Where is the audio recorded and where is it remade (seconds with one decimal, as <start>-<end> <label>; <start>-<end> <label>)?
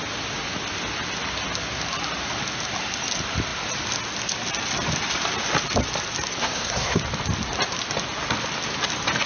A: 0.0-6.4 recorded; 6.4-7.0 remade; 7.0-9.3 recorded